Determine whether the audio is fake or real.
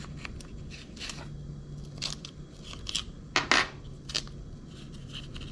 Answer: real